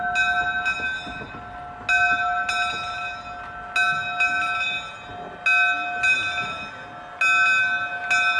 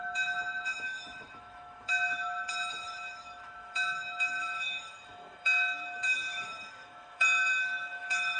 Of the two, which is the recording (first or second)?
first